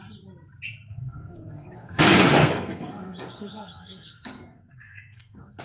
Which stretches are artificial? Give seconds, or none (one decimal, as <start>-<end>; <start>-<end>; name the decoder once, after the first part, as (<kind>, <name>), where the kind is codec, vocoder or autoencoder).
0.9-2.0 (codec, SNAC); 2.4-5.6